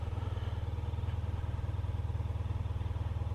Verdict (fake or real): real